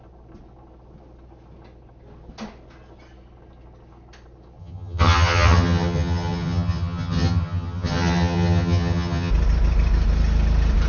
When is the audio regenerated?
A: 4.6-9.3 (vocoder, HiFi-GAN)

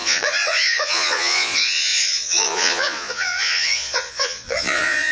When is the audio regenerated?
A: 0.0-5.1 (vocoder, Vocos)

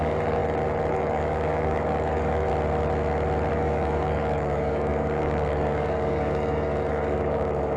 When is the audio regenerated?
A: 0.0-0.4 (codec, DAC); 0.9-2.5; 3.5-7.8

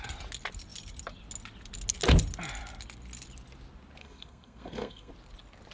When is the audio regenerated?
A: 4.0-5.1 (codec, SNAC)